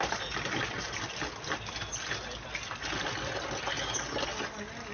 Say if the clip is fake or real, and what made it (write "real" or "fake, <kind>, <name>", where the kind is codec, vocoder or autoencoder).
real